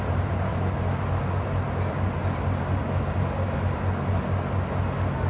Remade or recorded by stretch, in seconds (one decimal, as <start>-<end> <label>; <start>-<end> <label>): 0.0-5.3 recorded